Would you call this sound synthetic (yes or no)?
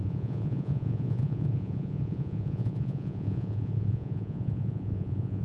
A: yes